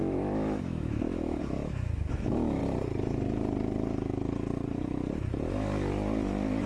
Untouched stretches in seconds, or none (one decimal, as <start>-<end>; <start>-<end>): 2.6-6.7